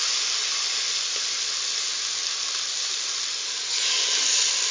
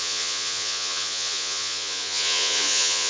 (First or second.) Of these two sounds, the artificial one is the second